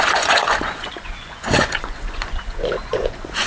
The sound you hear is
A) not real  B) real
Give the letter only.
A